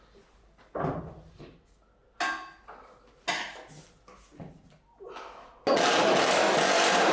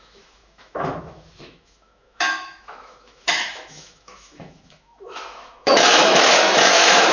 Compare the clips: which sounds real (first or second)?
first